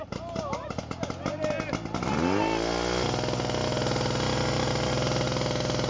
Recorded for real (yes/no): yes